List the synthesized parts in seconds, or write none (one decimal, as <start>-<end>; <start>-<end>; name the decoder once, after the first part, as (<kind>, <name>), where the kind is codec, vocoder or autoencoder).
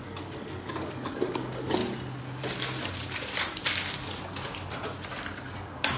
0.0-1.8 (codec, DAC); 5.4-6.0